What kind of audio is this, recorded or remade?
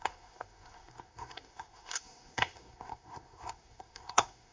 remade